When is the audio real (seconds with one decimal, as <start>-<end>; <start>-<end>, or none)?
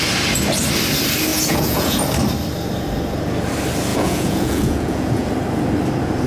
0.0-1.3; 2.0-3.9; 5.3-6.3